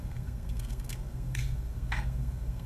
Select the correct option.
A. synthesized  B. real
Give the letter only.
A